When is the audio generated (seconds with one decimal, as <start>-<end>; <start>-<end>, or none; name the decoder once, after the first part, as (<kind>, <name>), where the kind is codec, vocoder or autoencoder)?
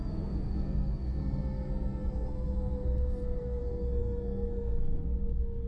0.0-5.7 (codec, SNAC)